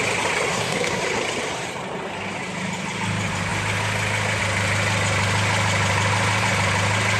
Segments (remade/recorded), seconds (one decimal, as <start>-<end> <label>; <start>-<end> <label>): 0.0-0.5 recorded; 0.5-1.0 remade; 1.0-7.2 recorded